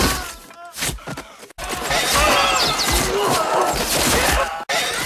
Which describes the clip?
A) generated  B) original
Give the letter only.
B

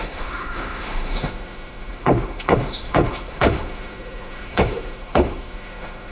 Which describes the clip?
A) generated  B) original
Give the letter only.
A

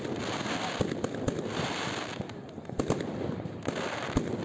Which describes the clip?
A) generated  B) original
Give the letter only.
B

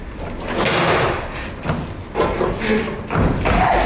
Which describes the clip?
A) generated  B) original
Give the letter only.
B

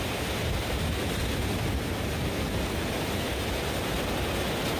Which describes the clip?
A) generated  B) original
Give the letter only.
B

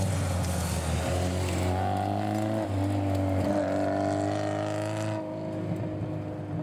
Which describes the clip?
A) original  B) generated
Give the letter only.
A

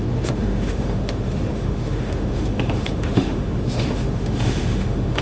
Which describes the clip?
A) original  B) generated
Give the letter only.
B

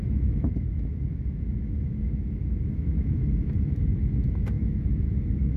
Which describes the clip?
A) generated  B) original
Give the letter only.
A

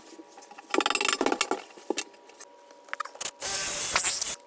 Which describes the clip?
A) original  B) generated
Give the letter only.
A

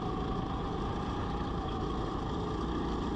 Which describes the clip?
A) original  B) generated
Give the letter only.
A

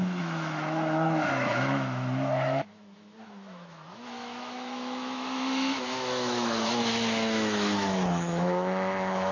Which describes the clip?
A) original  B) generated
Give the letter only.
B